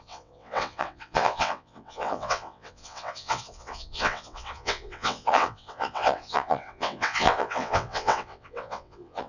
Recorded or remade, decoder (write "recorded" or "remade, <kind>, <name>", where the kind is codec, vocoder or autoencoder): remade, vocoder, WaveNeXt